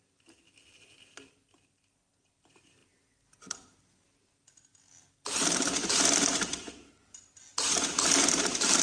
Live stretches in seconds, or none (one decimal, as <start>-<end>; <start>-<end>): 0.0-8.8